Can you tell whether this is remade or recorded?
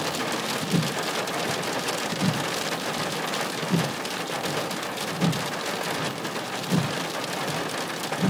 recorded